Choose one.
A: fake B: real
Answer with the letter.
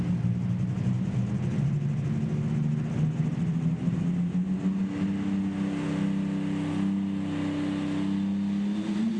B